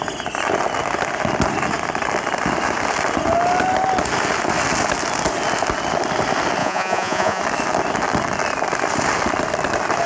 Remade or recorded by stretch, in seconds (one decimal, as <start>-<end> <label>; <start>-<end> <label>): 0.0-6.6 recorded; 6.6-7.4 remade; 7.4-10.1 recorded